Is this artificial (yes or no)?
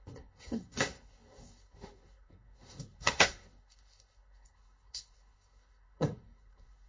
yes